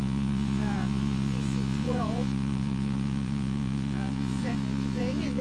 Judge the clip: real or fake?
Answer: fake